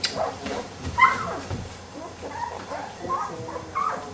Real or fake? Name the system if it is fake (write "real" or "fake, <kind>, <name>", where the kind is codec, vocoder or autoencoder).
fake, vocoder, BigVGAN v2